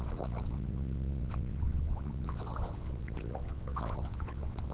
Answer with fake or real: fake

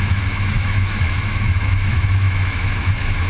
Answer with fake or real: fake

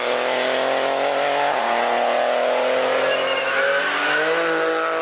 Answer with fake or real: real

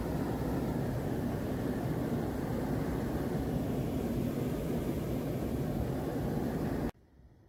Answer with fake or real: real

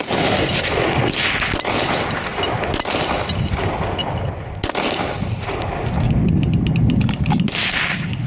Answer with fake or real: real